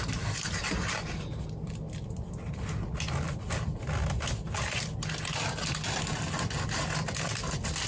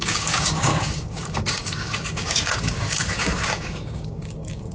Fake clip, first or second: second